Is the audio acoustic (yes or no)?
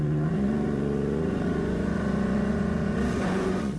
no